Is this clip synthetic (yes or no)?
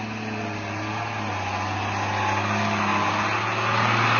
no